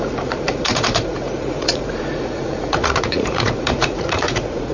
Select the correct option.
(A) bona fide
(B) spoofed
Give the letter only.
B